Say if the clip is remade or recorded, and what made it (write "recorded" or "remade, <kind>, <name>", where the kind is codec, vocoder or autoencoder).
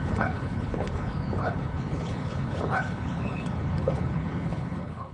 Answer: remade, codec, HILCodec